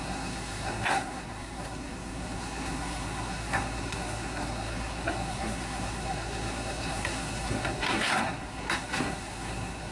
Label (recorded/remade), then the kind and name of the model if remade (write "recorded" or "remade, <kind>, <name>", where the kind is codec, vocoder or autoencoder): remade, codec, SNAC